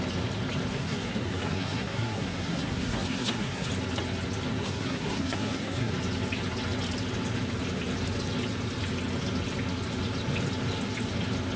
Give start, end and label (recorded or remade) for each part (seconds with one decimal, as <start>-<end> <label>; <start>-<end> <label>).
0.0-0.7 recorded; 0.7-3.7 remade; 3.7-4.6 recorded; 4.6-5.9 remade; 5.9-11.6 recorded